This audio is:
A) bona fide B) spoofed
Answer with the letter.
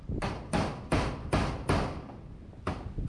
A